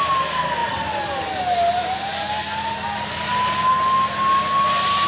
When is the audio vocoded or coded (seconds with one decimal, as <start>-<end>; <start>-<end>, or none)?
none